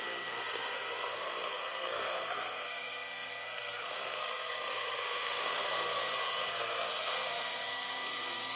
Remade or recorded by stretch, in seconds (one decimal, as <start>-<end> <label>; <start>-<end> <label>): 0.0-8.6 remade